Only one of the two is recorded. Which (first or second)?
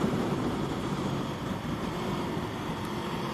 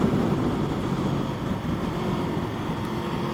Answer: second